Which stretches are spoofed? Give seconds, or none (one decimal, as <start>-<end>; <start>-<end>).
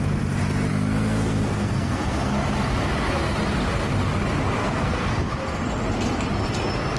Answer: 0.7-2.3; 4.6-5.3